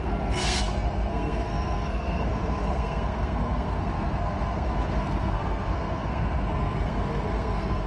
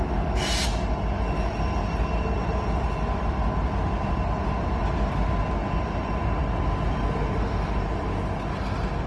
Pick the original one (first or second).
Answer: second